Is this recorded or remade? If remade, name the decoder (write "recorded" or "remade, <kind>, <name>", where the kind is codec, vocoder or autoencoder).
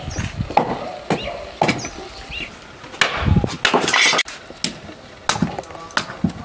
recorded